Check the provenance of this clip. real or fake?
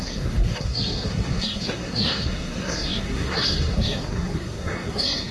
fake